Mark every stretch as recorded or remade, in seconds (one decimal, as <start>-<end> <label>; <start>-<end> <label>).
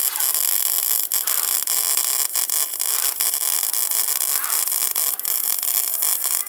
0.0-6.5 recorded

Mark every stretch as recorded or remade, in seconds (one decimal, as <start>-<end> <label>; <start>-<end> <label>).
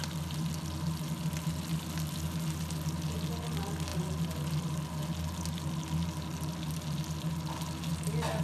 0.0-8.4 recorded